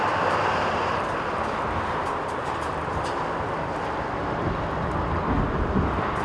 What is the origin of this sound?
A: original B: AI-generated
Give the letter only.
A